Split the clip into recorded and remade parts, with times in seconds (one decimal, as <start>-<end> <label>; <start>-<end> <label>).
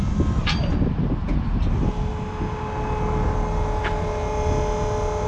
0.0-5.3 recorded